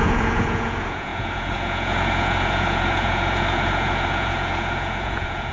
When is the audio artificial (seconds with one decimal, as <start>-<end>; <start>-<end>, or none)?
0.0-5.5